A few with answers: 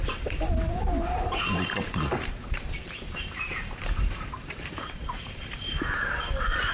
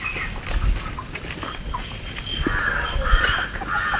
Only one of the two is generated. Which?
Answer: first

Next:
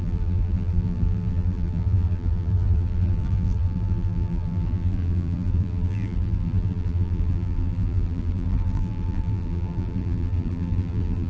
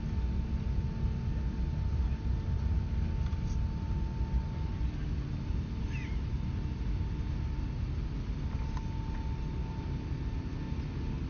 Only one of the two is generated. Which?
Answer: first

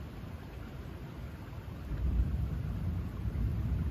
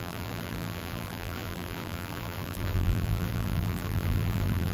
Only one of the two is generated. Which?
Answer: second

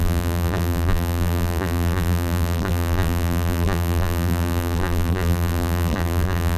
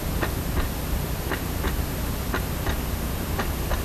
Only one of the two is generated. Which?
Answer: first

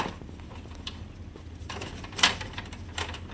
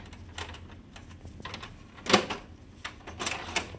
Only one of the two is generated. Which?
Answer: first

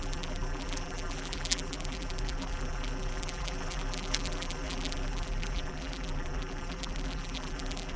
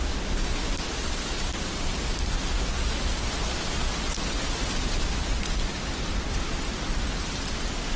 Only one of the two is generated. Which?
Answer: first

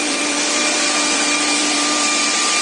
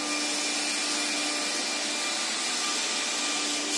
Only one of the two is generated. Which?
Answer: first